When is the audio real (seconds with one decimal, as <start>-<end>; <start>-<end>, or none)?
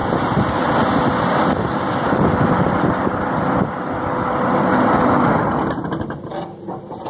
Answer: 0.0-7.1